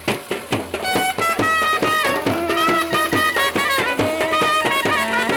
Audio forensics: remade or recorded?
recorded